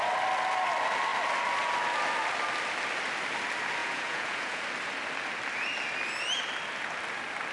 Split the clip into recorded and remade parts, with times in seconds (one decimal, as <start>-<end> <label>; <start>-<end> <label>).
0.0-3.8 recorded; 3.8-4.6 remade; 4.6-7.5 recorded